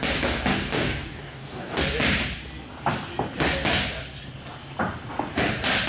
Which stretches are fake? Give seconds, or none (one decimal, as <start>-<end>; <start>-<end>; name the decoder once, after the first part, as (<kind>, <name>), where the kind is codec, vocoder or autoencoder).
0.5-1.8 (codec, DAC)